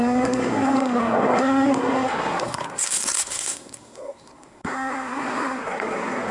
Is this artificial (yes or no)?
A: yes